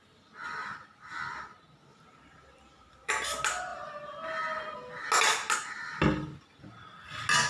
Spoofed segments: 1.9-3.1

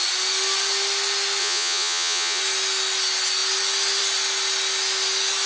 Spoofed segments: 1.4-2.4